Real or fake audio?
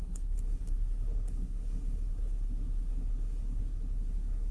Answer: fake